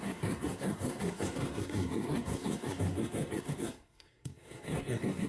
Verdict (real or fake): fake